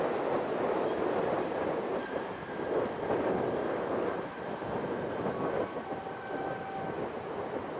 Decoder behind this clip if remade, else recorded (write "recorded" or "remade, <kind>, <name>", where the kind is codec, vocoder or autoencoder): recorded